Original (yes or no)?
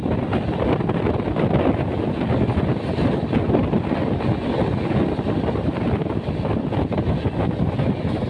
yes